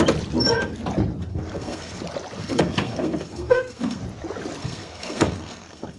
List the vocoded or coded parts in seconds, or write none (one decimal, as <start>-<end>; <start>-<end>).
1.3-2.0; 2.4-4.0; 4.6-6.0